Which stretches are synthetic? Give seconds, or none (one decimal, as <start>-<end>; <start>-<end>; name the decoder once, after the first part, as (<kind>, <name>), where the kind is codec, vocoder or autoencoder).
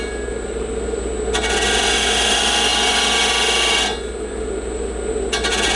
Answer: none